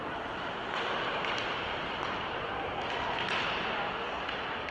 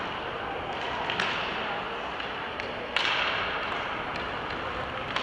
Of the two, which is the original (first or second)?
second